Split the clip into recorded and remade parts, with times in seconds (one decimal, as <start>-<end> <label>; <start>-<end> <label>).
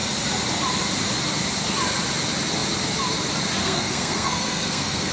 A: 0.0-3.6 recorded; 3.6-5.1 remade